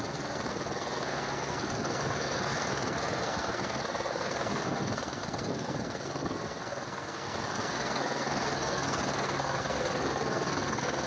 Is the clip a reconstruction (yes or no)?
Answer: yes